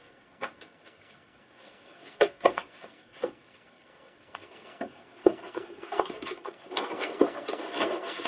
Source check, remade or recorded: remade